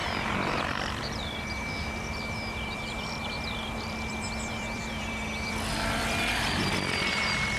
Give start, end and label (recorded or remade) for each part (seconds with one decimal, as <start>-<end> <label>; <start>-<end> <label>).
0.0-7.6 remade